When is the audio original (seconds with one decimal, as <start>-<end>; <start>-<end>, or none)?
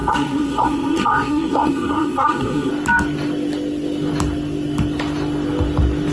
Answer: 2.7-6.1